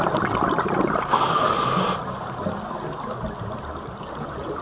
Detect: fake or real real